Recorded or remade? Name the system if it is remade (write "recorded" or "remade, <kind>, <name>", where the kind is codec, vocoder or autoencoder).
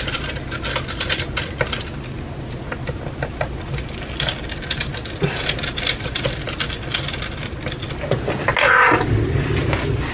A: recorded